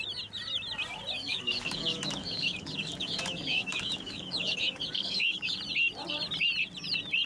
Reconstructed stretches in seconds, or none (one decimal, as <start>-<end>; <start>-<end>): 1.2-5.6